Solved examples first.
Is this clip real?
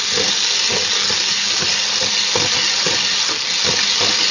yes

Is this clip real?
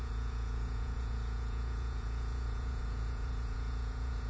no